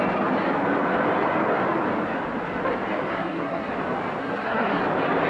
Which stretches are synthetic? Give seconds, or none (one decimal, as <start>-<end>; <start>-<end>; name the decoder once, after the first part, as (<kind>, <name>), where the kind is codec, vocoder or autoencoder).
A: 3.1-3.7 (codec, SNAC); 4.2-4.8